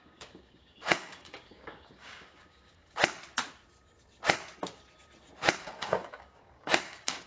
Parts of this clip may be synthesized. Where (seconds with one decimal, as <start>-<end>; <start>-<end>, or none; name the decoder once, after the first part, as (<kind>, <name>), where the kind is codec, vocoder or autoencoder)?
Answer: 0.0-3.0 (codec, DAC); 5.6-7.3